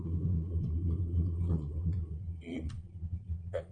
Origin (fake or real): fake